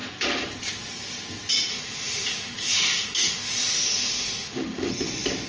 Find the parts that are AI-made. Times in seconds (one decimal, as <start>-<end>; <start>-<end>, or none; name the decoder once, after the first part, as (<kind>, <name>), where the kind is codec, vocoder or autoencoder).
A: 1.7-4.9 (autoencoder, DAC-VAE)